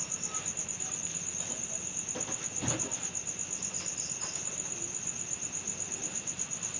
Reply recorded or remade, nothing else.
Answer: recorded